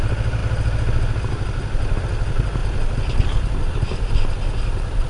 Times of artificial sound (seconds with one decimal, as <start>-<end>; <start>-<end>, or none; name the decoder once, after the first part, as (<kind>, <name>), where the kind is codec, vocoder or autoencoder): none

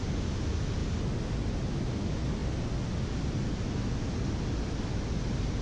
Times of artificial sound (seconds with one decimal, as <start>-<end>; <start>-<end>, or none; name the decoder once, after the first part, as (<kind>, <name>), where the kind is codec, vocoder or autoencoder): none

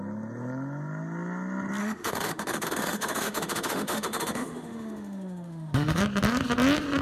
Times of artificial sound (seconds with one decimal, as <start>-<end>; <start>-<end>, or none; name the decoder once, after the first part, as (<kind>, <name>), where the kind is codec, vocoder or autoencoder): 1.8-6.0 (autoencoder, DAC-VAE)

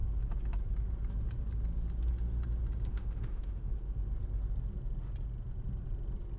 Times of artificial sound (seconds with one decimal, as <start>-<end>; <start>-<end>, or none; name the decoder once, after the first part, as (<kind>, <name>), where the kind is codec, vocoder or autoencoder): 2.9-3.7 (autoencoder, DAC-VAE)

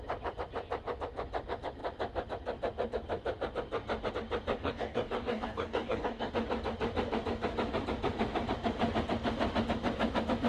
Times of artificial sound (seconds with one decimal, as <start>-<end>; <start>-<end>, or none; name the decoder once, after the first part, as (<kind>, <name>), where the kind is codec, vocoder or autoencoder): 4.6-6.3 (codec, DAC)

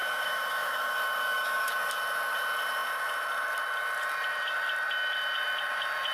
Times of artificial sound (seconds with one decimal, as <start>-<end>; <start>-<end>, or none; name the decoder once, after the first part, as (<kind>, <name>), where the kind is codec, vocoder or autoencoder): 0.0-1.7 (autoencoder, DAC-VAE)

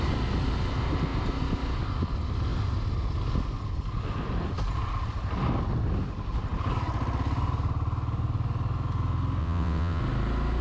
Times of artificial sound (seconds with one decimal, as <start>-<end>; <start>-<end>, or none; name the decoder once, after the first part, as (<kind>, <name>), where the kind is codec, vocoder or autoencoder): 9.4-10.0 (vocoder, WaveNeXt)

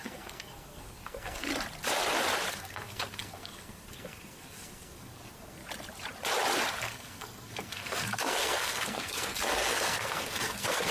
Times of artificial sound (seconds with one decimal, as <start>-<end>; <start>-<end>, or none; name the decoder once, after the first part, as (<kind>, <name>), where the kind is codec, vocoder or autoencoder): 0.0-1.5 (codec, SNAC); 2.5-5.6; 6.8-10.9